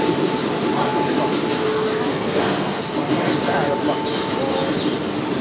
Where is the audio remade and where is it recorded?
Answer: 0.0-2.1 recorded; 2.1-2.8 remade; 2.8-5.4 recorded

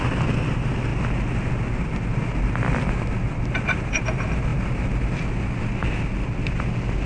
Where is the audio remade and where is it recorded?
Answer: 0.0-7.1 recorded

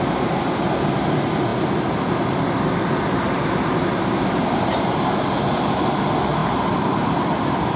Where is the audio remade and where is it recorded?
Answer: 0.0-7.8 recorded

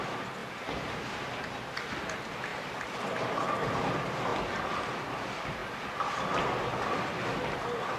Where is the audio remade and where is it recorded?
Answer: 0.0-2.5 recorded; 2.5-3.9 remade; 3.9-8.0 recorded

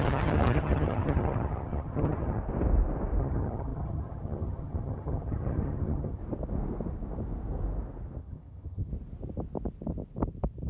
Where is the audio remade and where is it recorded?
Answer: 0.0-2.4 remade; 2.4-3.2 recorded; 3.2-6.2 remade; 6.2-8.2 recorded; 8.2-8.9 remade; 8.9-10.7 recorded

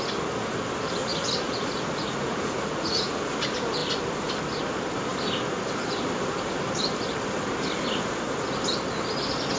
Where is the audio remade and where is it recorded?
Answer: 0.0-1.0 recorded; 1.0-3.2 remade; 3.2-9.6 recorded